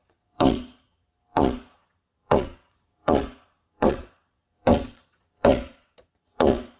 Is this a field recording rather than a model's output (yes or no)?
no